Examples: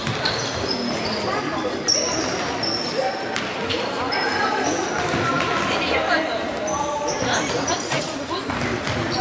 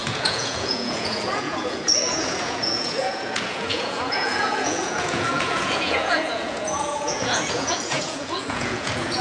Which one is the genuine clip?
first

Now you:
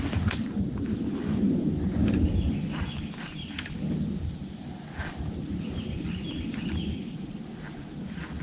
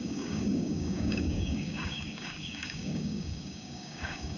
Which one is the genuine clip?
first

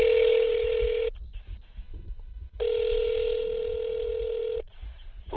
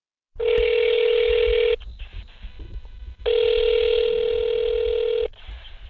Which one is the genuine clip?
second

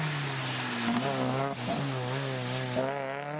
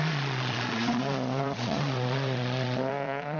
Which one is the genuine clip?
first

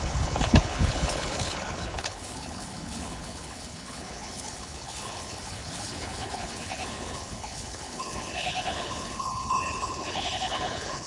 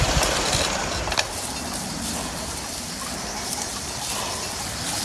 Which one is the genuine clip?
second